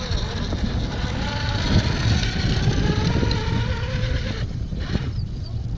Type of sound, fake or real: real